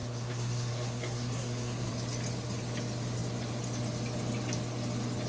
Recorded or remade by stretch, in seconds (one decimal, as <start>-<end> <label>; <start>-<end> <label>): 0.0-1.9 remade; 1.9-5.3 recorded